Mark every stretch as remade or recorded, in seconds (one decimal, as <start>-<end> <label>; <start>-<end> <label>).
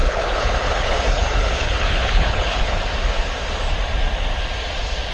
0.0-2.8 remade; 2.8-5.1 recorded